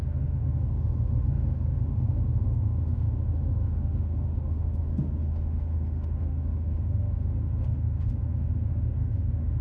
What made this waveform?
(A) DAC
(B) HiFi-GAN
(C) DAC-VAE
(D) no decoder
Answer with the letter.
C